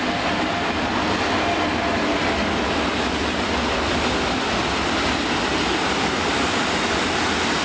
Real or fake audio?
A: real